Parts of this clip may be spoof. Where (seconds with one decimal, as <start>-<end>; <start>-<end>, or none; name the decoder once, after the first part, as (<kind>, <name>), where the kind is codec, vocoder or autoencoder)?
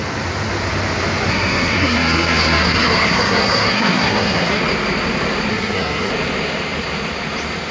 1.3-4.6 (codec, SNAC); 5.5-6.1